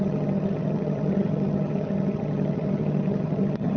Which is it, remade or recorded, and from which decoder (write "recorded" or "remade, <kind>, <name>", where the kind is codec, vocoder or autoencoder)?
remade, vocoder, HiFi-GAN